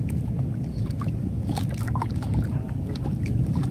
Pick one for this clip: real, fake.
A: fake